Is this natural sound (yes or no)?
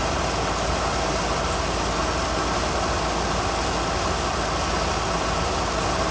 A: yes